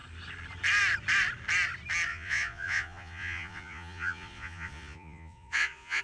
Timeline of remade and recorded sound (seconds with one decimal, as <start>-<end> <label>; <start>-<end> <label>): 0.0-2.1 recorded; 2.1-6.0 remade